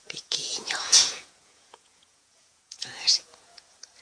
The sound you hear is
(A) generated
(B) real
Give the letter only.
A